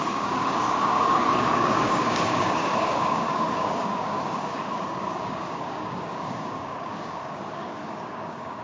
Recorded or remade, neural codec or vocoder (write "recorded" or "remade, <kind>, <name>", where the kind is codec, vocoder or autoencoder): remade, codec, DAC